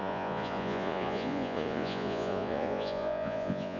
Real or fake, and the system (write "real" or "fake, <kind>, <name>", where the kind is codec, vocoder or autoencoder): fake, vocoder, Vocos